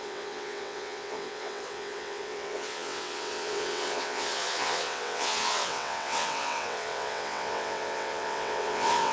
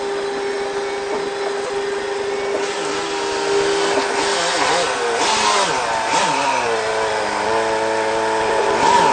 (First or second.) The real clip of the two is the second